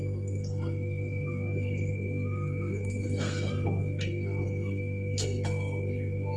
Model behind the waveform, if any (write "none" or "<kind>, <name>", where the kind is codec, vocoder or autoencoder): codec, SNAC